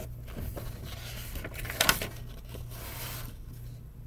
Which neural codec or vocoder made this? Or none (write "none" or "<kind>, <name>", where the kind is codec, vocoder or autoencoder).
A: none